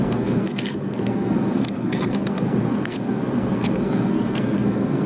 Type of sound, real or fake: fake